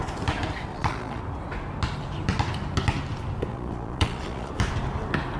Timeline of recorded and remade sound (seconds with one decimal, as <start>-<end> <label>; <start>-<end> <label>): 0.0-0.7 recorded; 0.7-1.2 remade; 1.2-3.5 recorded; 3.5-4.5 remade; 4.5-5.4 recorded